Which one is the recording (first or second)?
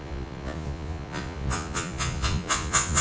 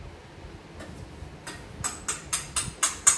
second